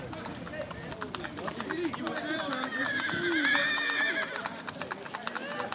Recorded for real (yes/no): yes